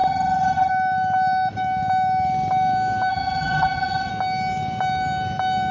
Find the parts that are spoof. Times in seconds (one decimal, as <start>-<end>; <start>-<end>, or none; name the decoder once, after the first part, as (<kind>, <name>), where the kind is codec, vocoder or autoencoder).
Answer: 0.0-0.7 (vocoder, HiFi-GAN); 3.1-4.1